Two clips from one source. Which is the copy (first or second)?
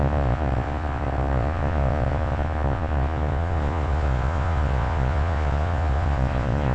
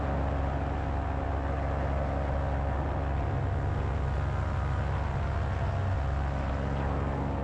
first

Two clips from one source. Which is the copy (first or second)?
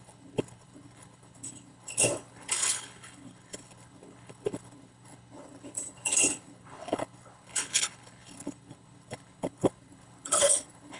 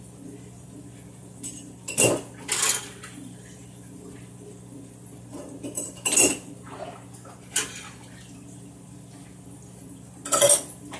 first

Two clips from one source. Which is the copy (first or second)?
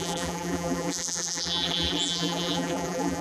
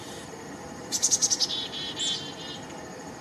first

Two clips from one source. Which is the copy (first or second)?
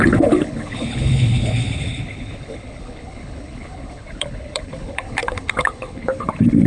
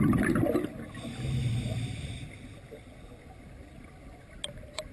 first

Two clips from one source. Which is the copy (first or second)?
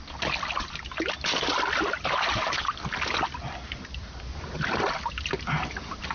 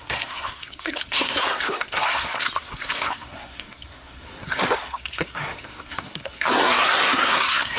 second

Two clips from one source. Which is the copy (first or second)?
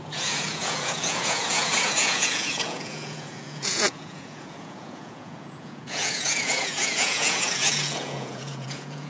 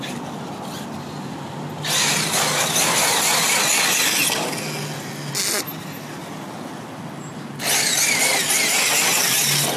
first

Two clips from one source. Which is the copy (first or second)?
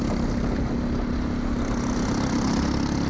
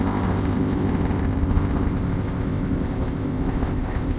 second